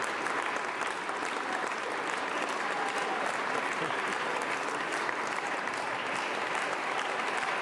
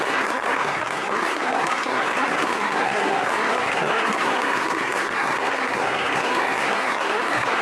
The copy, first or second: second